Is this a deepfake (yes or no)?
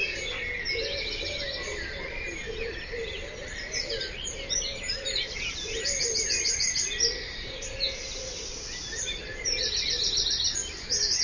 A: no